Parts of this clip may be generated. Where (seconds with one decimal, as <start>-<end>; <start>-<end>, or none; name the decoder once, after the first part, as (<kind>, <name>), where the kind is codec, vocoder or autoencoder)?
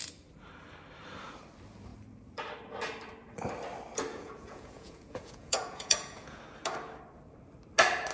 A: 4.1-6.4 (vocoder, Vocos)